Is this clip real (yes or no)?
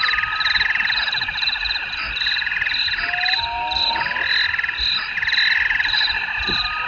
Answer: yes